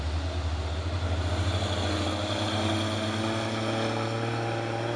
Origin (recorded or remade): recorded